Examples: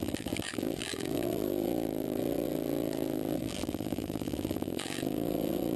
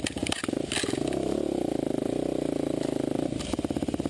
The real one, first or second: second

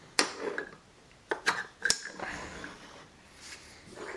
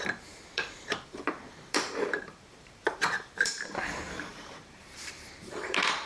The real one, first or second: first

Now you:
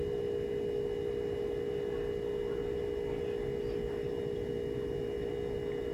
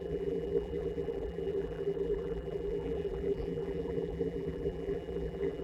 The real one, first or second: first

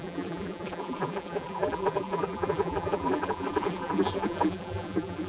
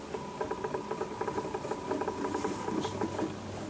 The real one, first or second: second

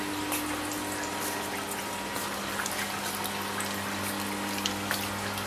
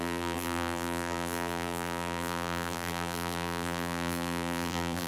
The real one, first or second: first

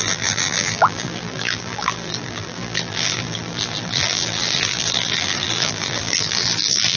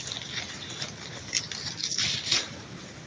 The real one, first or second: second